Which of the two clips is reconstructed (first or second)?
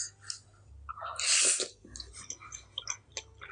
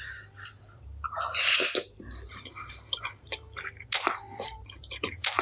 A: second